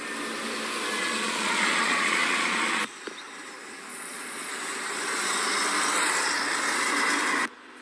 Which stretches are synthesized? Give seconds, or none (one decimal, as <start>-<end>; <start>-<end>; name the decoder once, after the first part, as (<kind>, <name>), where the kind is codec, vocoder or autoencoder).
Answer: 1.0-2.8 (vocoder, Vocos); 3.9-4.5